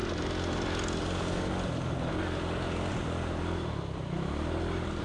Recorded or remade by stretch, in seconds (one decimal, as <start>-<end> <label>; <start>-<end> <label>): 0.0-5.0 recorded